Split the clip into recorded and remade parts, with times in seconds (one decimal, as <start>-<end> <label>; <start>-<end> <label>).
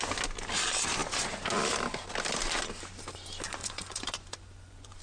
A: 0.0-3.6 recorded; 3.6-5.0 remade